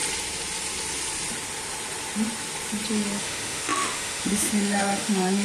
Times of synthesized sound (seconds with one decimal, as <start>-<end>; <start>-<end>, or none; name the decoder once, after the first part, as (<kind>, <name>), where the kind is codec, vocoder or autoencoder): 3.2-5.4 (autoencoder, DAC-VAE)

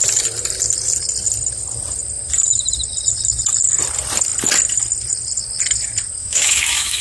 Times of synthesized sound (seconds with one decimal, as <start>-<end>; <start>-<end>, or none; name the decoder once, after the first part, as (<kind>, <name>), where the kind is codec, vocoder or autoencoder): 6.2-7.0 (autoencoder, DAC-VAE)

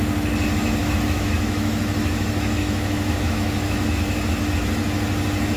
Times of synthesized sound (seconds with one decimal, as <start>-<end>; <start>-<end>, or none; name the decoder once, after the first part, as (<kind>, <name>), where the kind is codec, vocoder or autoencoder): 0.8-4.2 (autoencoder, DAC-VAE)

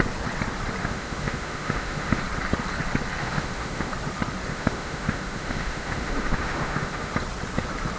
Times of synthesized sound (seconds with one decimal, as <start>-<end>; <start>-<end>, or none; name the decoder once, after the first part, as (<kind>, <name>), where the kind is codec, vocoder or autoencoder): 0.8-2.2 (autoencoder, DAC-VAE); 3.2-3.9; 4.5-7.1

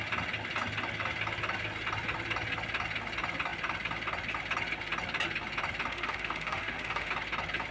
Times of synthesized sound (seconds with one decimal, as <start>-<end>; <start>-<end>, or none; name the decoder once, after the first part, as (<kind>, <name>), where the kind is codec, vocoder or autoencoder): 5.9-7.1 (autoencoder, DAC-VAE)

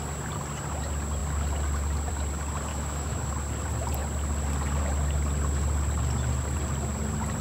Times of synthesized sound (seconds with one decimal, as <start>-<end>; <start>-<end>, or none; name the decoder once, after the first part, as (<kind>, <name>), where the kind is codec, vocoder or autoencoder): 2.7-3.3 (autoencoder, DAC-VAE)

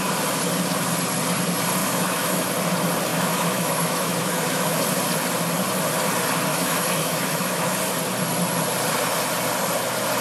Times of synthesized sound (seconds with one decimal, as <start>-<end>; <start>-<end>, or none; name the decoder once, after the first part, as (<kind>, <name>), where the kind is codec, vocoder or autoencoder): 1.8-2.5 (autoencoder, DAC-VAE); 3.1-4.8; 6.5-7.8

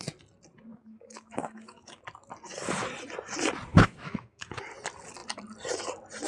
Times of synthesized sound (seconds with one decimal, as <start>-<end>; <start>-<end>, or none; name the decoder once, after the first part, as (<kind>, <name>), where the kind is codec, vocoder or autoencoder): 0.7-2.0 (autoencoder, DAC-VAE); 3.7-4.6